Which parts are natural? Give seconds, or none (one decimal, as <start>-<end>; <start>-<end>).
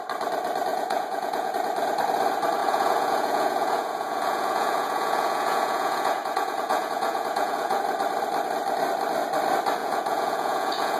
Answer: 0.0-0.7; 1.5-2.6; 7.8-9.8